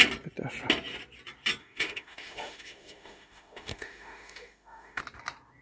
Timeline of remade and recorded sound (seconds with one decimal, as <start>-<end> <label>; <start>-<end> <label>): 0.0-1.6 recorded; 1.6-5.0 remade; 5.0-5.6 recorded